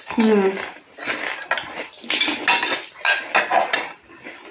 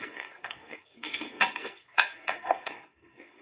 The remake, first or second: second